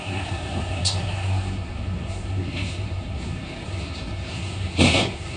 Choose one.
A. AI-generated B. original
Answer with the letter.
A